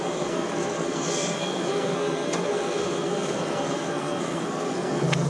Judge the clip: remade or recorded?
remade